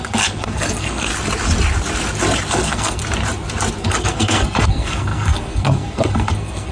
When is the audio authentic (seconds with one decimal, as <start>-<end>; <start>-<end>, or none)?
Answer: 1.1-2.5; 3.0-3.8